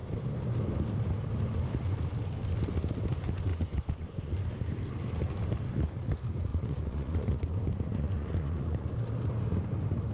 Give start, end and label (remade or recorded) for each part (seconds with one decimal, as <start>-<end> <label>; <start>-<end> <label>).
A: 0.0-3.5 recorded; 3.5-4.3 remade; 4.3-6.5 recorded; 6.5-8.9 remade; 8.9-10.1 recorded